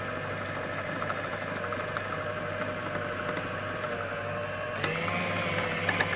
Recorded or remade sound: recorded